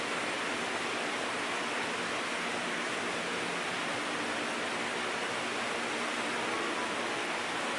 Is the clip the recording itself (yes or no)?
yes